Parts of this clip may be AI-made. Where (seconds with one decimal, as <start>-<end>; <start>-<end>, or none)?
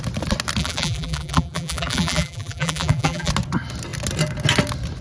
0.6-3.3